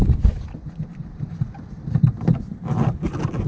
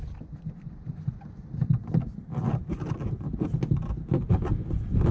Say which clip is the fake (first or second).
first